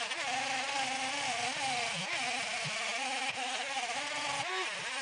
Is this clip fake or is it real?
real